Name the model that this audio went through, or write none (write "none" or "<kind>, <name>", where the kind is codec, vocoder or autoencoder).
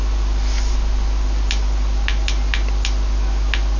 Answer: none